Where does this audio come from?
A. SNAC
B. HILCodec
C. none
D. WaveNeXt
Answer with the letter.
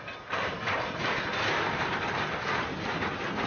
C